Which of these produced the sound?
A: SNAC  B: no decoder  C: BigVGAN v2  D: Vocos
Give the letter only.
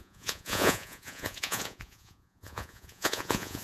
D